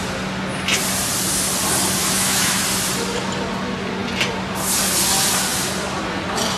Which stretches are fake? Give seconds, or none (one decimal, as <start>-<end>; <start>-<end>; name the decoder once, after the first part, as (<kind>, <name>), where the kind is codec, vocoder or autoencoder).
2.0-2.6 (autoencoder, DAC-VAE)

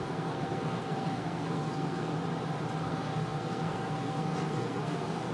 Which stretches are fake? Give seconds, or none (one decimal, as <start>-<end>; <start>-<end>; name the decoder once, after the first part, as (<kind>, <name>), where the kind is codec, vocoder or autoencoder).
0.0-2.1 (codec, SNAC); 2.8-5.3